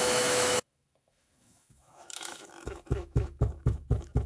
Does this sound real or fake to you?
fake